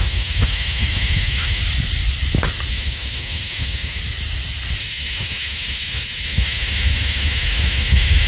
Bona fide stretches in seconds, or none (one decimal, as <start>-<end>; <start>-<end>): 1.6-2.7; 4.0-4.8